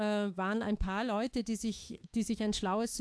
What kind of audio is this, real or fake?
fake